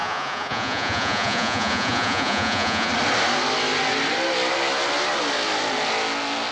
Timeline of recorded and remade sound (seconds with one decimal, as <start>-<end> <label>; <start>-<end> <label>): 0.0-2.9 remade; 2.9-6.5 recorded